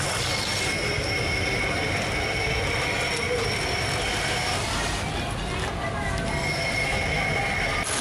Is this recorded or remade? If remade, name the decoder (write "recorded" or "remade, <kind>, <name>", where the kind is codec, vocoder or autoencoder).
recorded